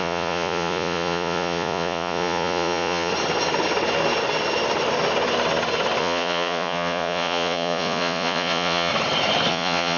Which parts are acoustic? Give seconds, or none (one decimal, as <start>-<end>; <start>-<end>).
3.1-6.0; 8.9-9.5

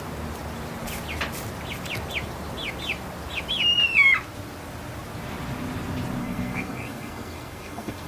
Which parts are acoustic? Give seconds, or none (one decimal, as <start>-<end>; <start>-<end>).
0.0-6.2

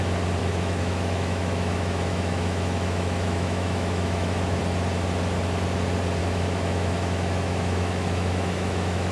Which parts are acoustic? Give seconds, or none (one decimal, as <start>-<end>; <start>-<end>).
0.0-0.4; 4.6-6.2

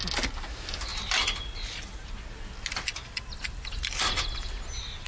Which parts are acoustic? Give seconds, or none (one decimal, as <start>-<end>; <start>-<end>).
0.0-5.1